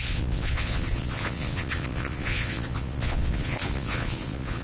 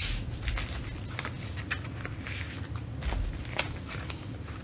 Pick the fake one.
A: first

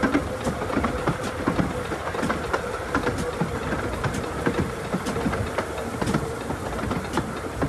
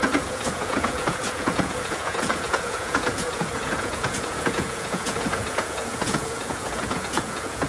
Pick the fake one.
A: second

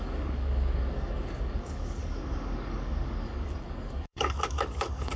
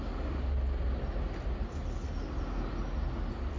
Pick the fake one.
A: first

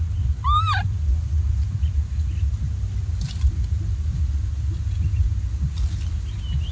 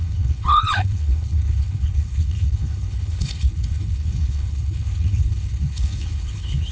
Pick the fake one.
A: second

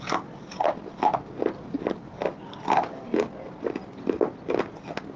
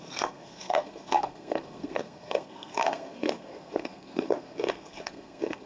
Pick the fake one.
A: second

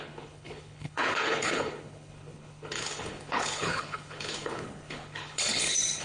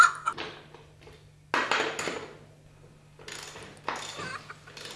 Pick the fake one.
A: first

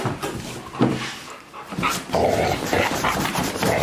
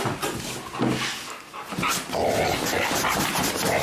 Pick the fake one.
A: first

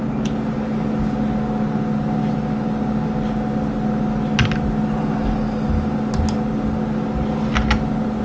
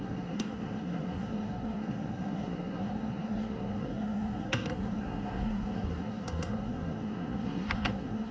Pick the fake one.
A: second